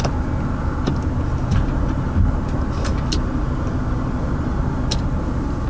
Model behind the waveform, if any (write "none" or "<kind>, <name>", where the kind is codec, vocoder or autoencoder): none